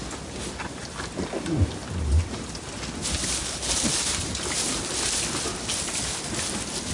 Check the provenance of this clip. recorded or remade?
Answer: recorded